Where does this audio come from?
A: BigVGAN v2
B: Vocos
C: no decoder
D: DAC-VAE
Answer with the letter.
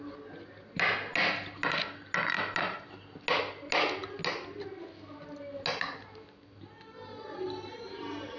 C